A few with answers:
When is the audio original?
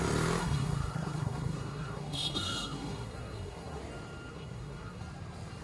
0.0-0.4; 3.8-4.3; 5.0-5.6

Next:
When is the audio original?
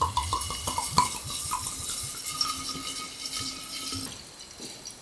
0.0-5.0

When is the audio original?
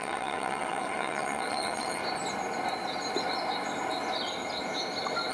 2.0-5.3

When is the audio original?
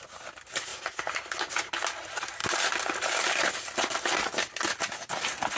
0.0-5.6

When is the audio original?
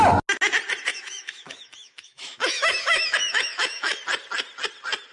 0.0-0.9; 4.0-5.1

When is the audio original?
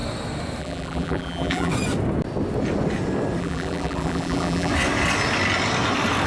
0.0-0.6; 1.7-3.4; 4.7-6.3